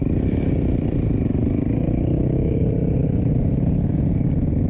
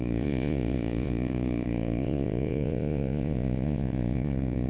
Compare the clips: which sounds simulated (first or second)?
second